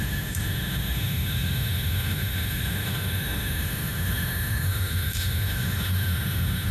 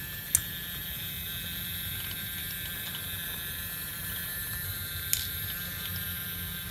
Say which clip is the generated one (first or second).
first